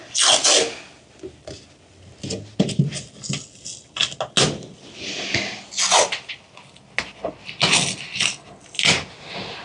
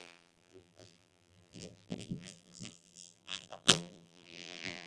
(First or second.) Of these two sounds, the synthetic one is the second